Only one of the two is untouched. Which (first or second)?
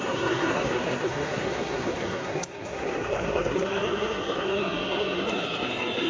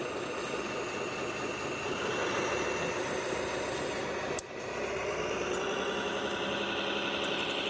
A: second